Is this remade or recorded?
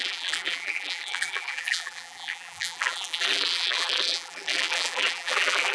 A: remade